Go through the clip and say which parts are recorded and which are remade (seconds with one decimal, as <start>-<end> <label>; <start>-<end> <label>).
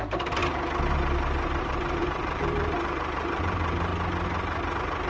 0.0-0.4 remade; 0.4-1.6 recorded; 1.6-3.9 remade; 3.9-5.1 recorded